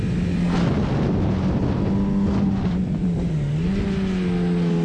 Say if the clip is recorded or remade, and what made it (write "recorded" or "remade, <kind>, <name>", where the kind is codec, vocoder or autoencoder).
recorded